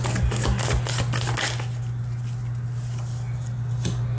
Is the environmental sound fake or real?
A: real